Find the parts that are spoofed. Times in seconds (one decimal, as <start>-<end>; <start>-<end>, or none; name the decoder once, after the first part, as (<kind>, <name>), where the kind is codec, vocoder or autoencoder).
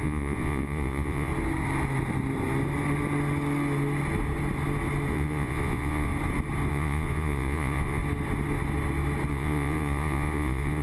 0.0-1.3 (vocoder, Vocos); 5.1-6.1; 6.7-8.0; 9.3-10.8